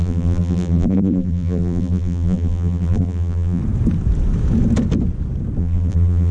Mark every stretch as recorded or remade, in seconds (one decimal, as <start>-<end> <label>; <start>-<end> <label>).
0.0-3.6 remade; 3.6-5.6 recorded; 5.6-6.3 remade